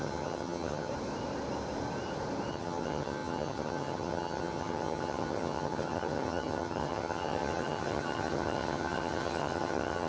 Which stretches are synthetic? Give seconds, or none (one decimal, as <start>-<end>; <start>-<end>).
0.0-0.9; 2.5-10.1